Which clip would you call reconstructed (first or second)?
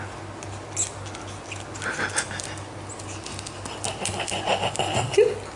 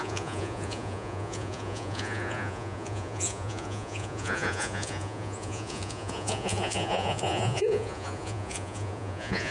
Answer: second